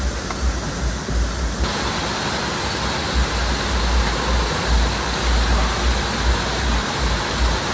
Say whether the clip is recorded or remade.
recorded